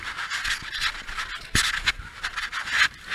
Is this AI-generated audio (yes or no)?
no